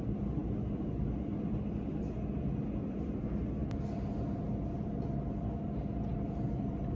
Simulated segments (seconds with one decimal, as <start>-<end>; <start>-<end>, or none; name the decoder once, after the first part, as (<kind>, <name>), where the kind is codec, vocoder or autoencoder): none